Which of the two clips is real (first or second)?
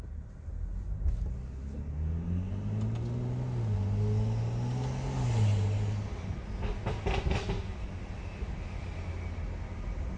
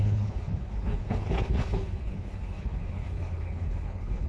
first